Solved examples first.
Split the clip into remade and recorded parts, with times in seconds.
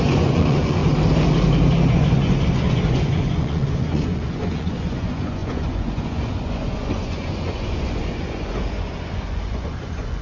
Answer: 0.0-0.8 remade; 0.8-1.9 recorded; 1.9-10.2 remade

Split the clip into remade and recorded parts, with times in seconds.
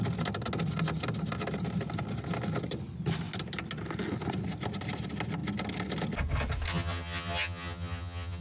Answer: 0.0-6.7 recorded; 6.7-8.4 remade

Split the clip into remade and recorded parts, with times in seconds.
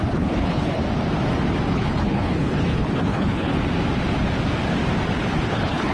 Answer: 0.0-0.8 remade; 0.8-1.7 recorded; 1.7-3.5 remade; 3.5-5.5 recorded; 5.5-5.9 remade